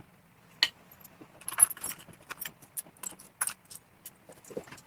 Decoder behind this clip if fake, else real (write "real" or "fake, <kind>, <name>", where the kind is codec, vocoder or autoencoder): real